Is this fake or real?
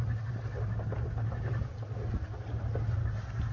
real